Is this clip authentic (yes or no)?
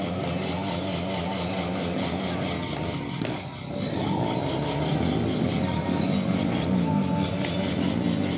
yes